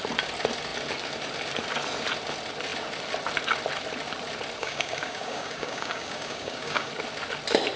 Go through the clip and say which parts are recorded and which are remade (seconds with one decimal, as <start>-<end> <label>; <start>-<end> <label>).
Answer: 0.0-4.6 recorded; 4.6-6.9 remade; 6.9-7.8 recorded